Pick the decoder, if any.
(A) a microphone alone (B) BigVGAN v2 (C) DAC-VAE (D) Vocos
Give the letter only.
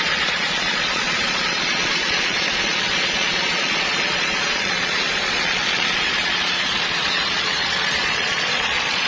D